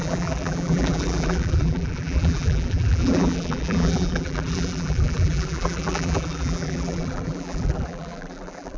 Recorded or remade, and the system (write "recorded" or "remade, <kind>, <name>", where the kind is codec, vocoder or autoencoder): remade, vocoder, BigVGAN v2